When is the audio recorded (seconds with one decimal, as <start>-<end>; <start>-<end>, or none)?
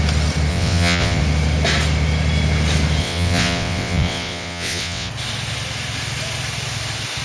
0.0-0.5; 1.2-3.0; 5.1-7.2